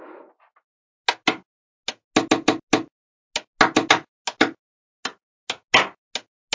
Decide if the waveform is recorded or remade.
recorded